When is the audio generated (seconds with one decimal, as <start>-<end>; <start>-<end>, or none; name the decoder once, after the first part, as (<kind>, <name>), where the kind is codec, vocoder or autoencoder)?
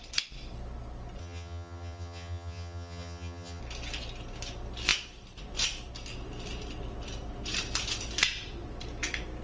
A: 1.2-3.6 (vocoder, HiFi-GAN)